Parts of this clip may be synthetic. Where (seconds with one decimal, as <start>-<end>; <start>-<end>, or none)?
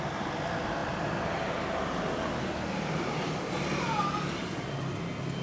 none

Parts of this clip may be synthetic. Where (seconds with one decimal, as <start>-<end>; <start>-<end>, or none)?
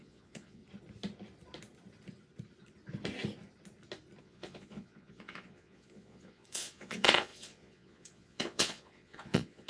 0.0-0.6; 4.2-9.7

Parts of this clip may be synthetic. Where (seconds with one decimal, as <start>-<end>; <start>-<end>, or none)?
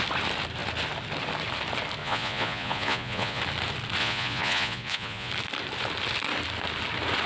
2.0-3.4; 4.0-5.3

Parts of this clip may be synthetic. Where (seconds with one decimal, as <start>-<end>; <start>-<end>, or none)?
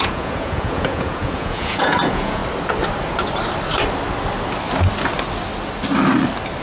0.0-2.4